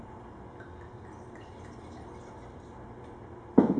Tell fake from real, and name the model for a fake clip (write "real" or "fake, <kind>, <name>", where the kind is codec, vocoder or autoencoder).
fake, vocoder, BigVGAN v2